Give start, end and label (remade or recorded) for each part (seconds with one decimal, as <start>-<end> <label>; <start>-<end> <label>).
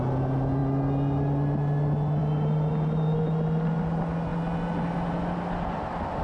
0.0-6.2 recorded